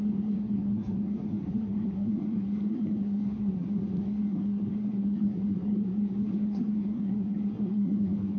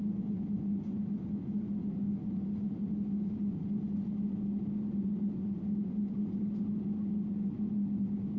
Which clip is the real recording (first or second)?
second